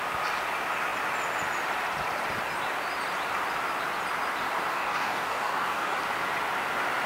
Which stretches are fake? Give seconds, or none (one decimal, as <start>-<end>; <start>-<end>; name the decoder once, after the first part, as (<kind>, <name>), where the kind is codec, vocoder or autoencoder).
4.7-6.0 (codec, DAC)